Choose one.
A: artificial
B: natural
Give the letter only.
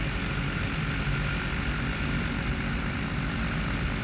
B